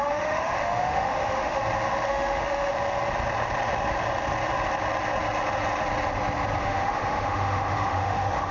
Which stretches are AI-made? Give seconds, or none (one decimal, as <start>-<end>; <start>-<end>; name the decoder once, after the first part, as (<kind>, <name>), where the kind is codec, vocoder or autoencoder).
0.0-1.6 (autoencoder, DAC-VAE); 2.1-2.7; 6.6-8.5